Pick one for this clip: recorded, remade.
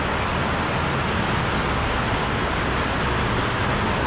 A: recorded